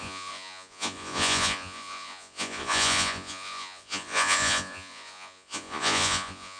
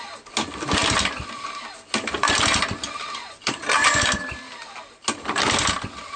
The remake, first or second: first